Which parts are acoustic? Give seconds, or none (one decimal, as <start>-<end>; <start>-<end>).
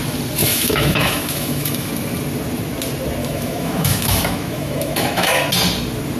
0.0-0.4; 1.9-3.2; 5.4-6.2